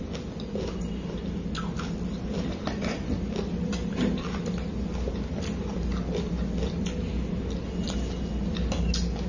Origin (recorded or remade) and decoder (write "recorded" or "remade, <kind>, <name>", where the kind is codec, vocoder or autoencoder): recorded